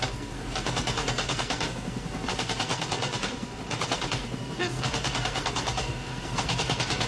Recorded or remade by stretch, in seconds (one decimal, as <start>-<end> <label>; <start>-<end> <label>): 0.0-7.1 remade